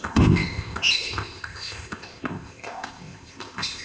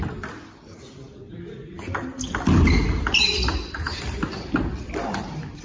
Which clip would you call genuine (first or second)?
second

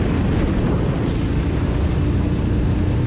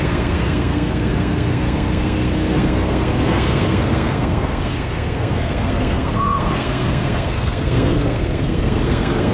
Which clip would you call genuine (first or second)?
first